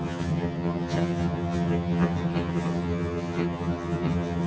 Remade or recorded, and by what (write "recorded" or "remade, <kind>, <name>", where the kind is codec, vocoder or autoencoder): remade, vocoder, HiFi-GAN